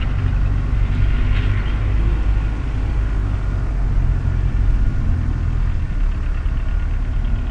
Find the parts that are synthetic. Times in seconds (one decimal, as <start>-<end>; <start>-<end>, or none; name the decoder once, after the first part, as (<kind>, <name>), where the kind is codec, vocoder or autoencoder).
none